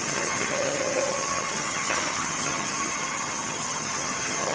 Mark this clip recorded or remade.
remade